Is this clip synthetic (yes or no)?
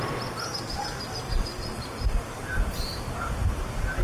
yes